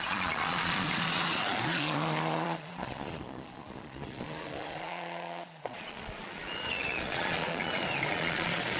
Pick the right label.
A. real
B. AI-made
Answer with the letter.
B